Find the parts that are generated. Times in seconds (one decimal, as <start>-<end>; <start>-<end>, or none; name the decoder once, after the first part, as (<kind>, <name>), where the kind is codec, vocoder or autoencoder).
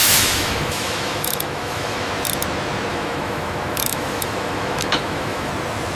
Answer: 0.0-2.1 (autoencoder, DAC-VAE); 2.9-5.5